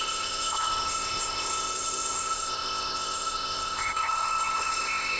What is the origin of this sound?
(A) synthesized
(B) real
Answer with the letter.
A